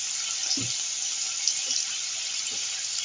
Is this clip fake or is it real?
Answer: real